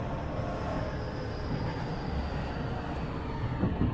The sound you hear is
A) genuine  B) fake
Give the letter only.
A